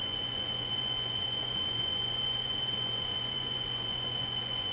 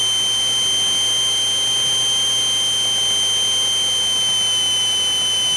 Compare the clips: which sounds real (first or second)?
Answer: second